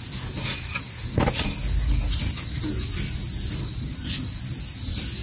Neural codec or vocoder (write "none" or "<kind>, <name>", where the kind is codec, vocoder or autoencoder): none